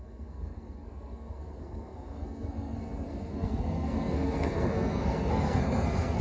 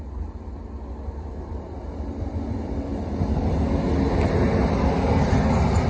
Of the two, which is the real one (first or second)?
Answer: second